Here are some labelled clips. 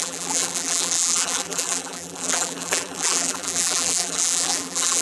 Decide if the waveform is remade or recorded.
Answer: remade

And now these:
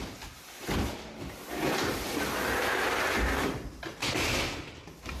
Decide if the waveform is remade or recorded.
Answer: recorded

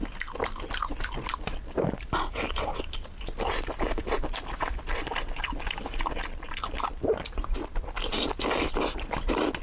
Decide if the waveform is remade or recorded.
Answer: recorded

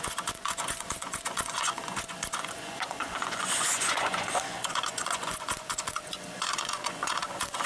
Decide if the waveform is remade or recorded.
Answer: remade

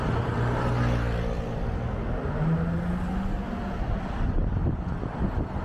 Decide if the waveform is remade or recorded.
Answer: recorded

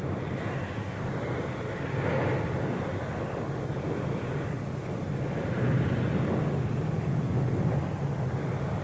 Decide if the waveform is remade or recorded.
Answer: recorded